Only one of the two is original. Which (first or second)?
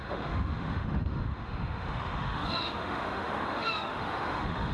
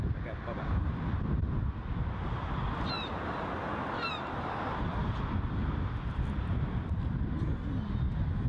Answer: second